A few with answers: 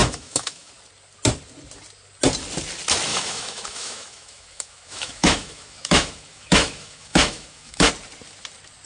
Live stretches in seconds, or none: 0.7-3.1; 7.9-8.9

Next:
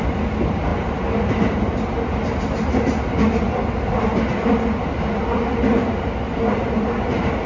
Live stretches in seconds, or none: 0.0-7.5

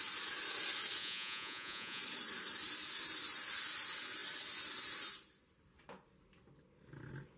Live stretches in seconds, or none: 0.0-1.0; 2.0-7.4